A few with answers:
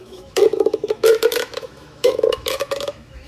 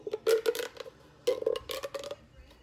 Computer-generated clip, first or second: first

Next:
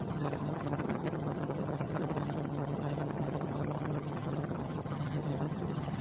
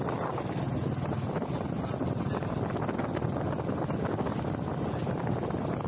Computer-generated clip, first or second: first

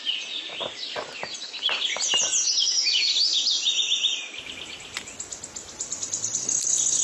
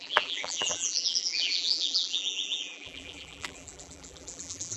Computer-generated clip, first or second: second